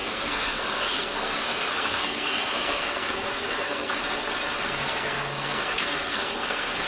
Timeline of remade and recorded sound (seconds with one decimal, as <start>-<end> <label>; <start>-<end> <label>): 0.0-4.0 remade; 4.0-4.6 recorded; 4.6-6.9 remade

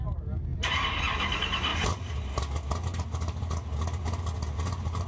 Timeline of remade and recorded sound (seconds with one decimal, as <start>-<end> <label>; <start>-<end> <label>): 0.0-5.1 recorded

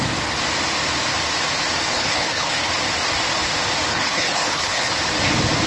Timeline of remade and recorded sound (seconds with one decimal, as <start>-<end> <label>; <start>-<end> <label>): 0.0-1.9 recorded; 1.9-2.7 remade; 2.7-3.9 recorded; 3.9-4.9 remade; 4.9-5.7 recorded

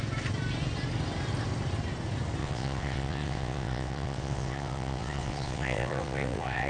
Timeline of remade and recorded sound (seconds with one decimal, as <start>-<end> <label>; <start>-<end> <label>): 0.0-2.4 recorded; 2.4-6.7 remade